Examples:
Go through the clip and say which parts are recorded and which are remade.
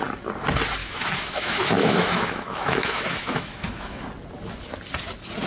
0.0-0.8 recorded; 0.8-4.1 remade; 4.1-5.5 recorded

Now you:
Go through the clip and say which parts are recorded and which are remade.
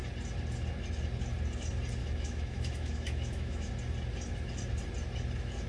0.0-2.0 recorded; 2.0-3.7 remade; 3.7-5.7 recorded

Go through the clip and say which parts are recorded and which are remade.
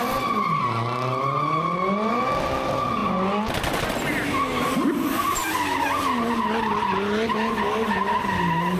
0.0-8.8 recorded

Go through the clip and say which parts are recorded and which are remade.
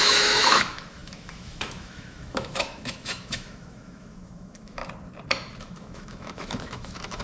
0.0-4.8 remade; 4.8-5.6 recorded; 5.6-7.2 remade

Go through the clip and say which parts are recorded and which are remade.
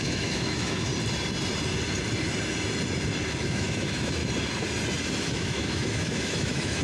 0.0-0.9 remade; 0.9-3.4 recorded; 3.4-4.2 remade; 4.2-5.2 recorded; 5.2-6.8 remade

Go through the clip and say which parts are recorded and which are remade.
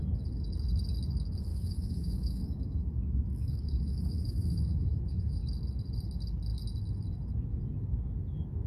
0.0-1.5 recorded; 1.5-5.4 remade; 5.4-8.7 recorded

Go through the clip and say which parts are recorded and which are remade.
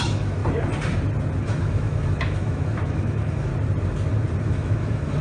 0.0-0.4 remade; 0.4-1.4 recorded; 1.4-3.5 remade; 3.5-4.4 recorded; 4.4-5.2 remade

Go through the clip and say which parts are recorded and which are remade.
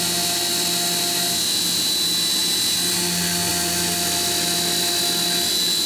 0.0-5.9 recorded